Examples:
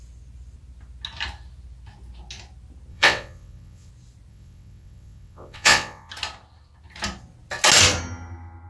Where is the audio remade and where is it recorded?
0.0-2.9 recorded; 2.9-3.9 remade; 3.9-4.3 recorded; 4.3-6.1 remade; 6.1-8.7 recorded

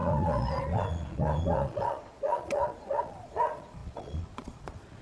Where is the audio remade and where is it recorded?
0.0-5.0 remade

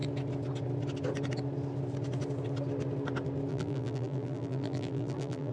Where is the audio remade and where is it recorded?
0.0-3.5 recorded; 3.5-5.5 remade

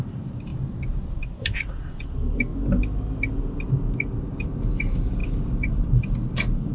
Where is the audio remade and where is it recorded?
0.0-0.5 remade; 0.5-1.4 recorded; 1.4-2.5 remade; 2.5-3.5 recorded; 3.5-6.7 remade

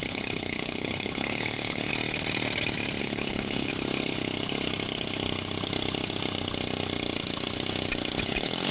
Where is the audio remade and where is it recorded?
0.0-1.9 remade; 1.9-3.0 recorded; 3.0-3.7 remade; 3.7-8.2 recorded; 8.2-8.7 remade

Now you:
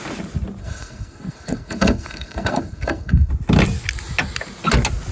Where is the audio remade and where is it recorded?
0.0-0.6 recorded; 0.6-3.3 remade; 3.3-5.1 recorded

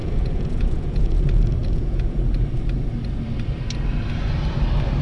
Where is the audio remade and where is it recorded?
0.0-1.2 remade; 1.2-1.6 recorded; 1.6-2.2 remade; 2.2-5.0 recorded

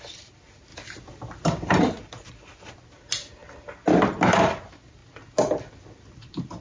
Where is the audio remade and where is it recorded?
0.0-6.6 recorded